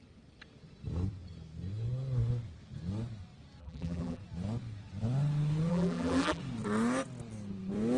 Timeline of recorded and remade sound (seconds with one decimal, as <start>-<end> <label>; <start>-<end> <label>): 0.0-3.6 recorded; 3.6-4.2 remade; 4.2-5.7 recorded; 5.7-6.4 remade; 6.4-8.0 recorded